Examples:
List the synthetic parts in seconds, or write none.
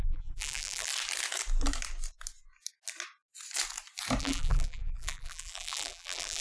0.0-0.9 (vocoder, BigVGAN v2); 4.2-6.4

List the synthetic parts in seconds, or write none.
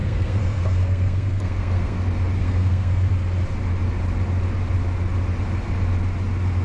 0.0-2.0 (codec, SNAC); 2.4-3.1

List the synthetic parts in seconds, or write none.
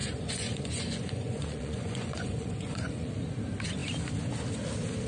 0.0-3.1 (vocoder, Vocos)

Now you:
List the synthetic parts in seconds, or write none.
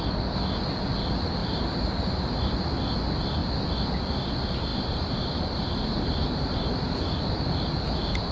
1.4-2.4 (vocoder, BigVGAN v2); 4.7-7.7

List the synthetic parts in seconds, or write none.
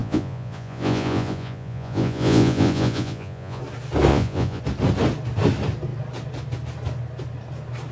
0.0-3.6 (vocoder, Vocos); 4.1-4.6